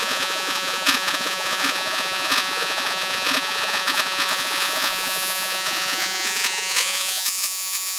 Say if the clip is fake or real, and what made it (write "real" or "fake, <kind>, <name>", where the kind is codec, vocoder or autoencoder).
fake, vocoder, Vocos